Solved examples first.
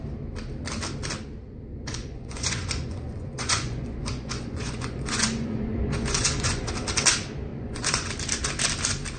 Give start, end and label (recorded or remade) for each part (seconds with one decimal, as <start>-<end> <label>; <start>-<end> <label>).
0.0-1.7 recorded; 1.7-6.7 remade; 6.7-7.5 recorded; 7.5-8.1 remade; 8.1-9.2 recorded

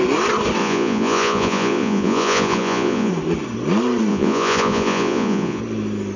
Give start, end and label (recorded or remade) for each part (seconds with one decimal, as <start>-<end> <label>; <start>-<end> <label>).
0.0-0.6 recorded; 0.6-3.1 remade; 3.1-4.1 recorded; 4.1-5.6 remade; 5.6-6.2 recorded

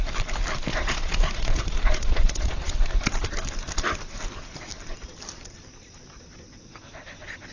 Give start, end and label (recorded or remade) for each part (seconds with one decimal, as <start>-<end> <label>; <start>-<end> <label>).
0.0-0.7 recorded; 0.7-2.7 remade; 2.7-7.5 recorded